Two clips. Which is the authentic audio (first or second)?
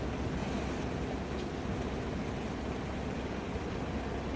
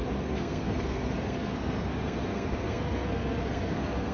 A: first